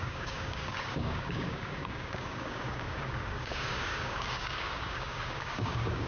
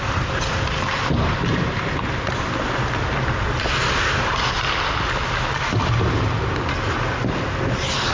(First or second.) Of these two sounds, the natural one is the second